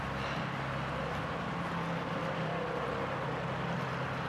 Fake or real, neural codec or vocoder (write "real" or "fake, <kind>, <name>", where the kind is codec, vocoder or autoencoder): fake, vocoder, BigVGAN v2